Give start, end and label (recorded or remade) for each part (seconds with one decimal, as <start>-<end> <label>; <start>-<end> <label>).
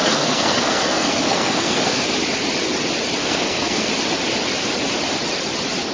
0.0-2.1 remade; 2.1-3.2 recorded; 3.2-3.9 remade; 3.9-5.9 recorded